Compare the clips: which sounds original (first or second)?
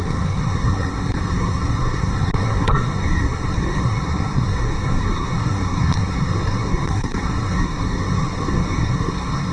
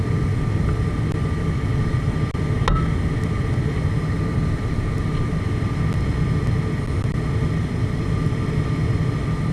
second